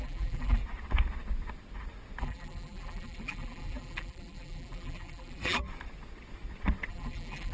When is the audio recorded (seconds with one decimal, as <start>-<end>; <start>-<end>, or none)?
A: 0.6-2.2; 5.6-6.9